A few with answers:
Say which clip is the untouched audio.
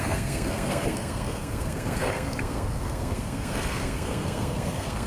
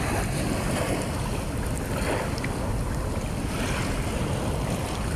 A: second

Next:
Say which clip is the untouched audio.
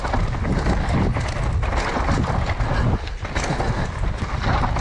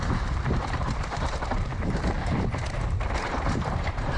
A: first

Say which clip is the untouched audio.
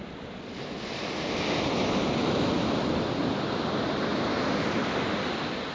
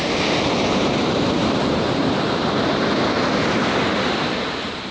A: first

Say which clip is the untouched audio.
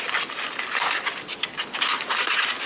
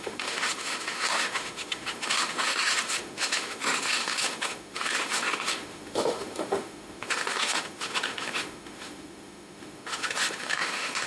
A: first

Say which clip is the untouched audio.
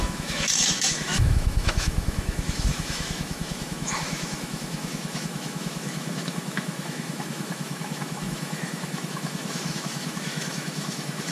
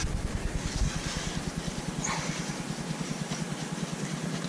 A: second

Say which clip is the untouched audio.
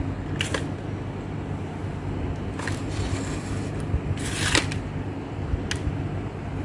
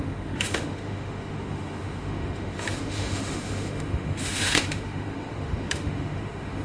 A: first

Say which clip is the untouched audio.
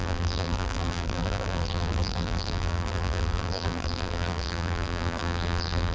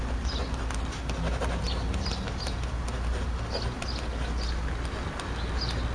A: second